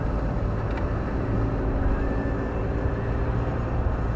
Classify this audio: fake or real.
real